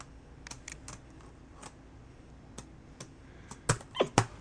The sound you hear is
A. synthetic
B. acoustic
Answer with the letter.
B